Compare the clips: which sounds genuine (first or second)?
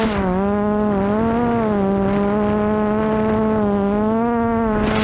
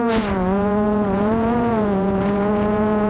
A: first